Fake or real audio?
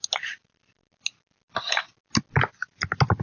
real